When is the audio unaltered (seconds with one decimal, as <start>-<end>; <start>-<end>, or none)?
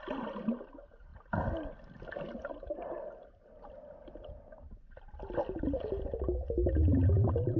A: 0.0-7.6